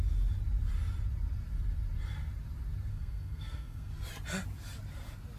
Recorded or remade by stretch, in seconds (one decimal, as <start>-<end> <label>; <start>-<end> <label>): 0.0-2.9 recorded; 2.9-3.9 remade; 3.9-5.4 recorded